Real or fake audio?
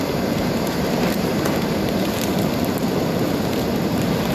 fake